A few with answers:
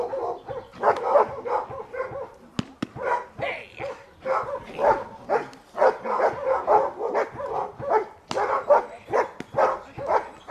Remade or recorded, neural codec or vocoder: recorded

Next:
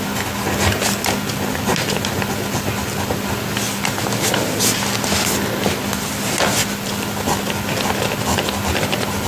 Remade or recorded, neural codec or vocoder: recorded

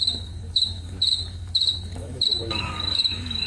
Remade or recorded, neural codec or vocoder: remade, codec, DAC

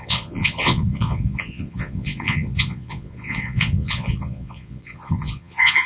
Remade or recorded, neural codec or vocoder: remade, vocoder, Vocos